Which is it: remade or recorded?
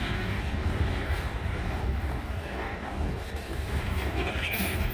remade